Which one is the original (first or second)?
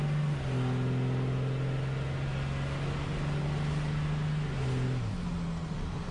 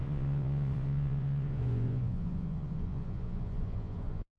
first